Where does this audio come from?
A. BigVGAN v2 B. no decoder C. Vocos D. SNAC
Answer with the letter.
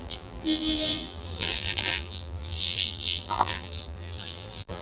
A